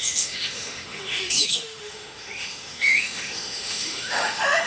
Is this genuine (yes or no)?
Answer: no